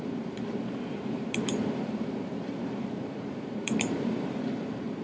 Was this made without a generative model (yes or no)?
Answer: no